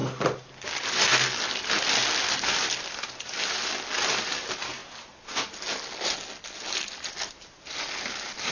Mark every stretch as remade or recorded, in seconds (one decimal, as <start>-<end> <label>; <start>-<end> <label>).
0.0-8.5 recorded